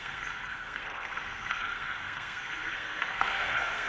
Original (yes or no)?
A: no